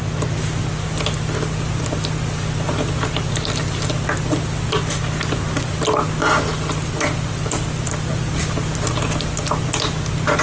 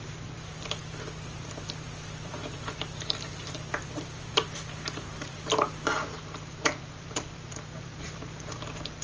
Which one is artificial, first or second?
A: second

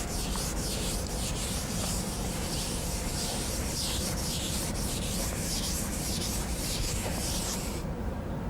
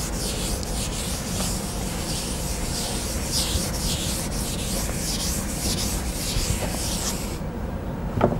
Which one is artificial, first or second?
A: first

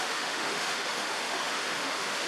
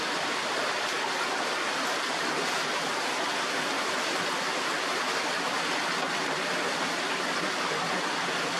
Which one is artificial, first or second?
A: first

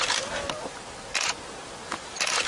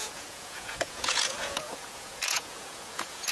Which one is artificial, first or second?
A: second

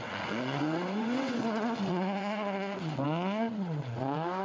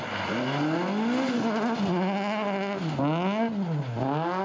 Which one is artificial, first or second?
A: first